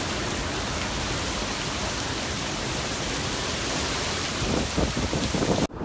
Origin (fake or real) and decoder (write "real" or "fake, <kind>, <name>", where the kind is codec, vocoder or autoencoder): real